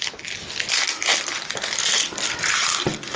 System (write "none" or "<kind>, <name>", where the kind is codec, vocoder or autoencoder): none